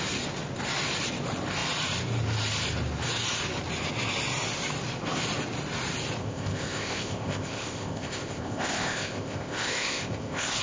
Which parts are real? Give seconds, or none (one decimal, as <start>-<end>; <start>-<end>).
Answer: 0.0-6.2